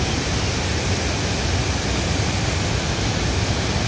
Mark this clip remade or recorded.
recorded